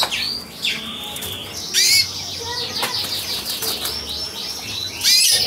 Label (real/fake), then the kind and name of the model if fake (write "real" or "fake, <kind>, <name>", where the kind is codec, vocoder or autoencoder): real